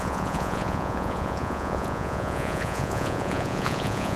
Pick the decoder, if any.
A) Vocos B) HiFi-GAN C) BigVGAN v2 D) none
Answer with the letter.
A